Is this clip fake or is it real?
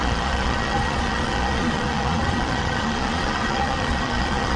fake